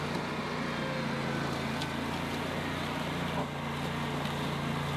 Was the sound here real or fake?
real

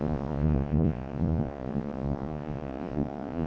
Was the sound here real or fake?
fake